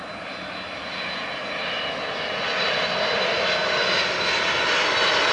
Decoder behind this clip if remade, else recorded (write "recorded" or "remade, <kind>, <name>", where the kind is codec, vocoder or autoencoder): recorded